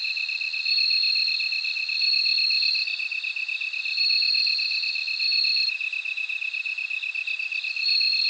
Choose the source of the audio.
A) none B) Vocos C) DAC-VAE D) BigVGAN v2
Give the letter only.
A